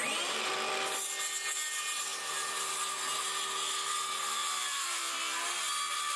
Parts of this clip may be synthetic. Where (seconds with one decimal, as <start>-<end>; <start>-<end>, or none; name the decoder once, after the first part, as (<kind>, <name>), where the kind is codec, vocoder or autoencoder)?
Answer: 4.4-5.0 (vocoder, BigVGAN v2)